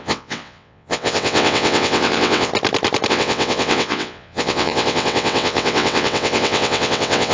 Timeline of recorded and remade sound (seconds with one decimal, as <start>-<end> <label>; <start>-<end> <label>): 0.0-2.5 remade; 2.5-3.1 recorded; 3.1-7.3 remade